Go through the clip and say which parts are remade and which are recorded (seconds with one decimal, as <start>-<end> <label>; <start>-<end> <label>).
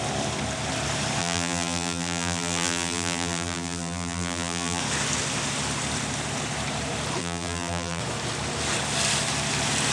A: 0.0-1.2 recorded; 1.2-4.8 remade; 4.8-7.2 recorded; 7.2-8.0 remade; 8.0-9.9 recorded